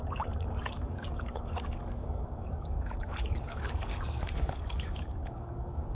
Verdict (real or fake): fake